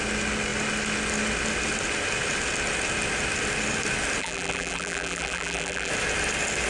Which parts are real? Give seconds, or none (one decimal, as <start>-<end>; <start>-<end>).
0.0-4.2; 5.9-6.7